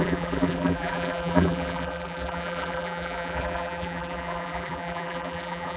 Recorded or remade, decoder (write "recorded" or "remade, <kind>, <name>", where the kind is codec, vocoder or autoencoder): remade, vocoder, BigVGAN v2